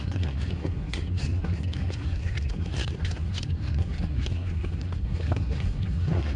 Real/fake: fake